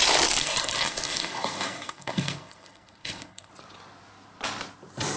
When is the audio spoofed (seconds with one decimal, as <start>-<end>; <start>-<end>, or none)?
0.4-3.5